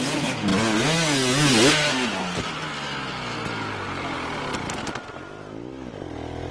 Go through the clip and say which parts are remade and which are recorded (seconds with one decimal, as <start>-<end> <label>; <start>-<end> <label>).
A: 0.0-6.5 recorded